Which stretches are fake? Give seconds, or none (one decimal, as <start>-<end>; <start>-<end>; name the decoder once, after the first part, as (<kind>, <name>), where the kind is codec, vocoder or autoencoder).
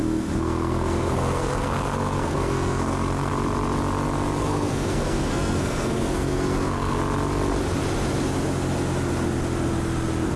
0.0-3.3 (codec, SNAC); 4.4-7.0